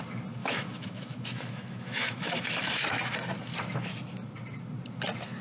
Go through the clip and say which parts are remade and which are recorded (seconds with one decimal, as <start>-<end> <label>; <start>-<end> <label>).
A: 0.0-0.4 recorded; 0.4-3.0 remade; 3.0-5.4 recorded